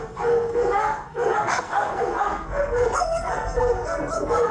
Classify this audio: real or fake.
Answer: fake